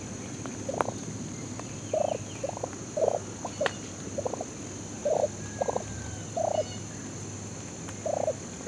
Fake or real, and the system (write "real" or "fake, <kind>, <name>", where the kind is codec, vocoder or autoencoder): real